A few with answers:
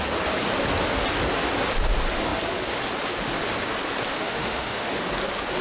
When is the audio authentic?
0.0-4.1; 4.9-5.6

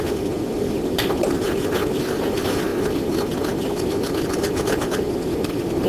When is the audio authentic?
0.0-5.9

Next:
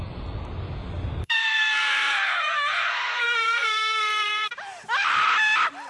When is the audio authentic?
0.0-1.2; 4.5-5.9